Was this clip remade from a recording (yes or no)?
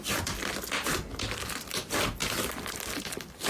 yes